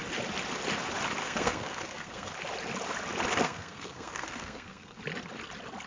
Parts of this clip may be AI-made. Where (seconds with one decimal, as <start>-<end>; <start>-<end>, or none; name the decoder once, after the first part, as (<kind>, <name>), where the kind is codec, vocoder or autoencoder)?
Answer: 1.2-2.3 (codec, SNAC); 3.4-5.0